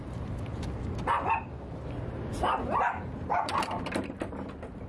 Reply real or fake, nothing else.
fake